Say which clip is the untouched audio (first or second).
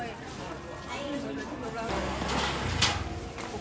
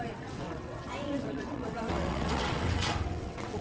first